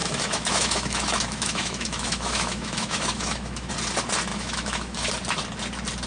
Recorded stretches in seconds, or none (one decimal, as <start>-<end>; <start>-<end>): 3.7-4.3; 5.1-6.1